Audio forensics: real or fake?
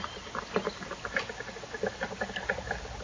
real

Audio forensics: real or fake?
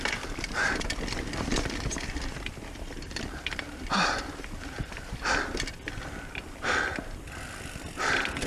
fake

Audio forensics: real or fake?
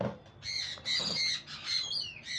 real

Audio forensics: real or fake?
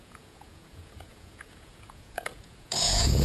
fake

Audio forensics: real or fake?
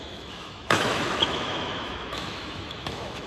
fake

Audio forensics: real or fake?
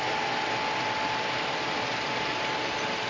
real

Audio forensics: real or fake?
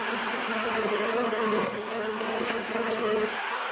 fake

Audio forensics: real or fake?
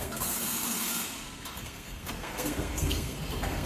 fake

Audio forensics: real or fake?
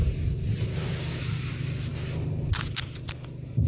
real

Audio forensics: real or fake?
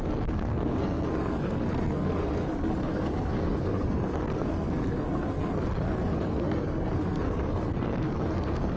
fake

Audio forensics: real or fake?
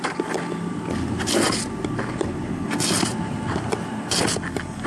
real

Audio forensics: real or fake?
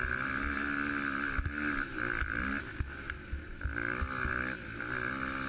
real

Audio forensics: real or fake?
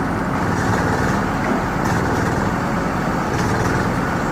real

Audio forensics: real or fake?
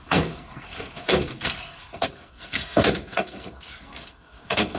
fake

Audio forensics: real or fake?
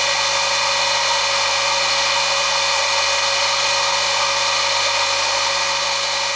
real